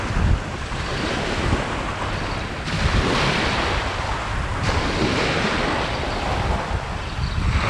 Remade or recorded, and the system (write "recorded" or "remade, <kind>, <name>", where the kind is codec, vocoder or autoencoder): recorded